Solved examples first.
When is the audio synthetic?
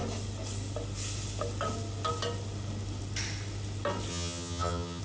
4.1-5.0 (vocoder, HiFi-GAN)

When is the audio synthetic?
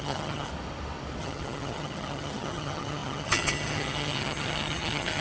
0.0-0.5 (vocoder, HiFi-GAN); 1.2-5.2